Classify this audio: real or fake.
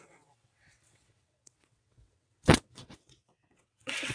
fake